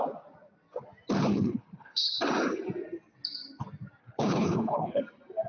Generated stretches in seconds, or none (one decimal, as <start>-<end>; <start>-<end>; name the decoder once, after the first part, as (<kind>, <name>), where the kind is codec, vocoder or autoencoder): 1.3-2.1 (codec, HILCodec); 4.0-5.0